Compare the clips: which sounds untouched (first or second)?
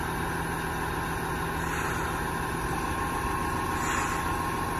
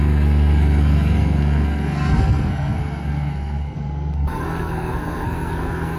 first